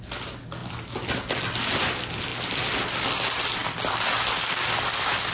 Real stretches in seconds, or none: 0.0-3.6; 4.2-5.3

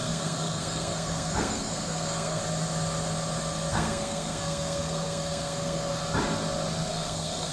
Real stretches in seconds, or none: 2.4-3.7; 6.0-6.9

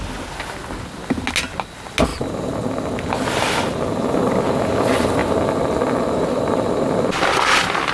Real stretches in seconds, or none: 0.0-7.9